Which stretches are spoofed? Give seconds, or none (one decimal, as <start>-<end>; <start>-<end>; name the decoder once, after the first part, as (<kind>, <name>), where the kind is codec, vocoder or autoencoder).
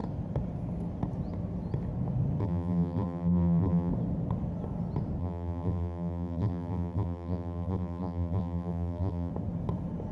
2.4-3.9 (vocoder, BigVGAN v2); 5.2-9.3